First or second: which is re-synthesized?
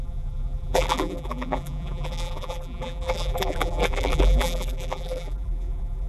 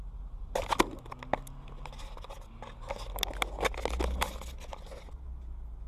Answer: first